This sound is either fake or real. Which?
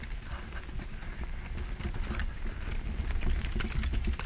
real